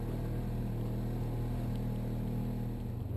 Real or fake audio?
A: real